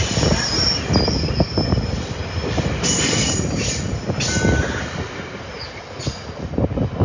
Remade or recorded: recorded